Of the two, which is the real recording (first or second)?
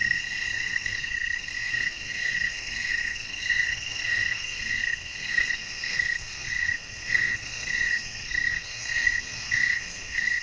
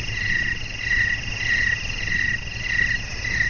second